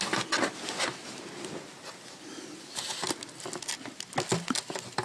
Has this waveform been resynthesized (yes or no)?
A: no